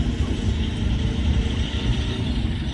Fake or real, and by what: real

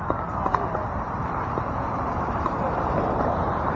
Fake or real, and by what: fake, vocoder, BigVGAN v2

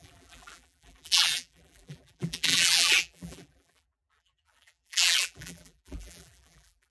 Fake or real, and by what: fake, vocoder, BigVGAN v2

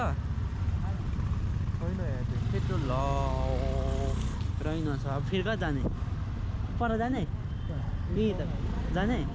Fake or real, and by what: real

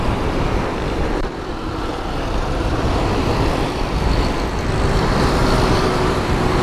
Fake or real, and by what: fake, vocoder, BigVGAN v2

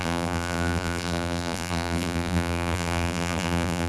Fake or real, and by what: fake, vocoder, BigVGAN v2